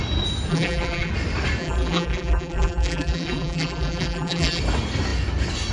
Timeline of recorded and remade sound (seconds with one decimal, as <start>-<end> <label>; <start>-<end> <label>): 0.0-0.5 recorded; 0.5-1.1 remade; 1.1-1.6 recorded; 1.6-4.6 remade; 4.6-5.7 recorded

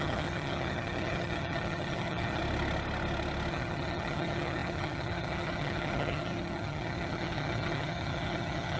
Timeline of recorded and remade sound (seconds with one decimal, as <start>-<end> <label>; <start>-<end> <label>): 0.0-2.4 remade; 2.4-3.5 recorded; 3.5-8.8 remade